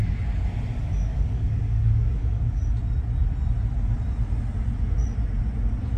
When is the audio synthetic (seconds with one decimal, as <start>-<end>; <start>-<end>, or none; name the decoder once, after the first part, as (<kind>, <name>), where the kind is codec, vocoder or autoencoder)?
0.8-2.6 (codec, DAC)